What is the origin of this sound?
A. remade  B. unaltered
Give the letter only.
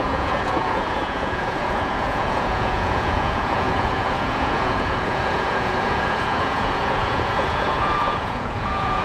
A